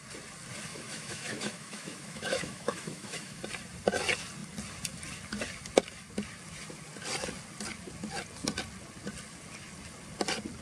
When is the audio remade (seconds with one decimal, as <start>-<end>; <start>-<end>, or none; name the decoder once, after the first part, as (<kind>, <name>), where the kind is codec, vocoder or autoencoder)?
0.7-3.4 (autoencoder, DAC-VAE)